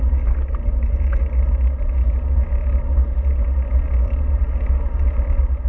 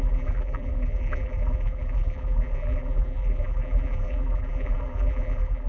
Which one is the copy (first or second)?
second